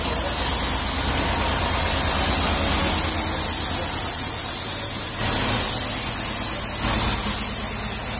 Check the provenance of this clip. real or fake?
real